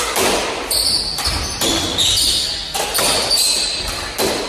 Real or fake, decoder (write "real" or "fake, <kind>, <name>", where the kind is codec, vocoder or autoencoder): real